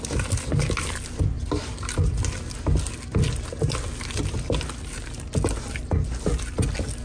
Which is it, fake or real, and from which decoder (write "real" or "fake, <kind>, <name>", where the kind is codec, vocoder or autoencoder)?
real